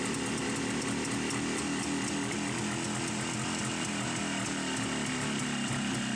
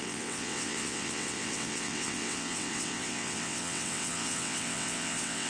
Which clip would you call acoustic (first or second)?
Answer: first